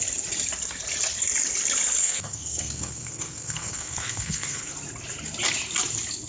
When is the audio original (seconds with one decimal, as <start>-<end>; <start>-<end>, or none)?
0.0-2.0; 4.7-6.3